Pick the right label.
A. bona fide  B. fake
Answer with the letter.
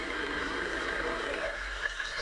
B